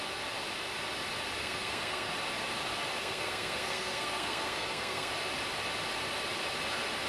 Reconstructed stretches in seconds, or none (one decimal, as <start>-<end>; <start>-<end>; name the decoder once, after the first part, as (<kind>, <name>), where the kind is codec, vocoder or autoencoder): 1.4-2.1 (codec, SNAC); 3.0-5.1